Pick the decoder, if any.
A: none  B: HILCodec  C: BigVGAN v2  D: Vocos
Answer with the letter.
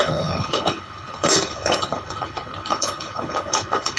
B